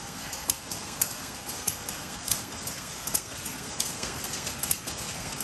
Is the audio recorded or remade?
remade